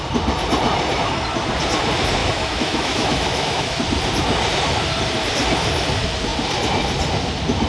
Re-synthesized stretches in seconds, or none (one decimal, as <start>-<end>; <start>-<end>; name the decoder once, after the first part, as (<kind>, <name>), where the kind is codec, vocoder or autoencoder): 2.2-3.8 (autoencoder, DAC-VAE)